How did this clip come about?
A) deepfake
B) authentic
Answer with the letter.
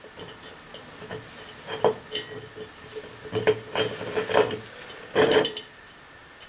B